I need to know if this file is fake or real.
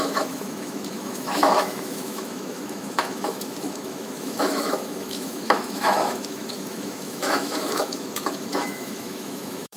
fake